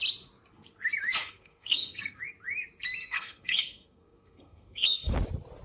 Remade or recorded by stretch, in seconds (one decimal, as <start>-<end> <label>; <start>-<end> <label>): 0.0-1.2 recorded; 1.2-2.2 remade; 2.2-3.0 recorded; 3.0-5.1 remade; 5.1-5.6 recorded